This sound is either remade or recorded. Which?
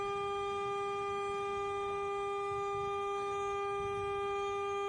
remade